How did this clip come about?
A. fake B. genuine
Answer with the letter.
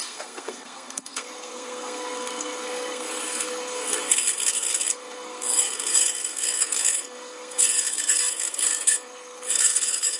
A